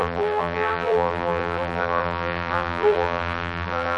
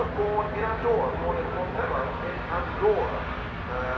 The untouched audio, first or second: second